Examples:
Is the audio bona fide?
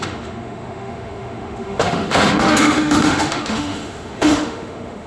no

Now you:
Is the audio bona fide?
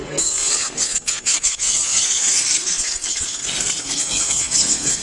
no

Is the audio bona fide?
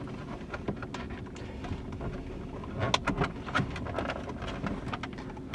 yes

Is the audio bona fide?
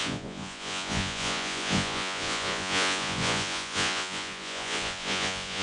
no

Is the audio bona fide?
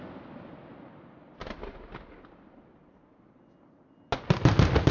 yes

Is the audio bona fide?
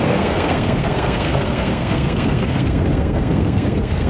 no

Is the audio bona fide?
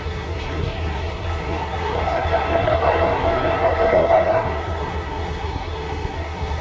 no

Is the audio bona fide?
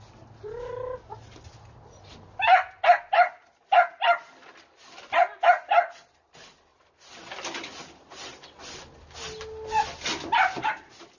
yes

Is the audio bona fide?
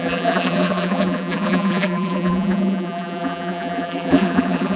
no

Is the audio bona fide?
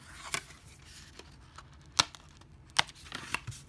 yes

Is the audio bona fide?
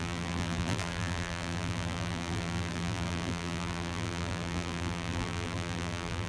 no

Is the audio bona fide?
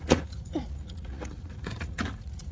no